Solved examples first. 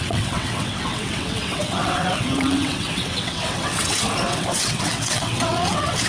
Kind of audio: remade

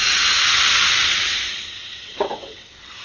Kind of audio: remade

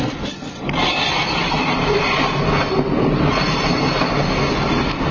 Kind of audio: recorded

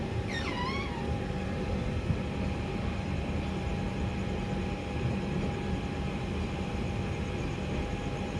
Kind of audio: recorded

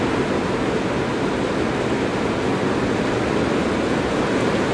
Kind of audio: recorded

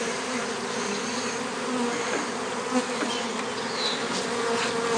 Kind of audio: recorded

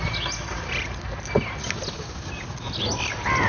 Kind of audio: recorded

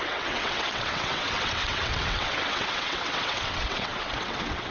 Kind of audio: remade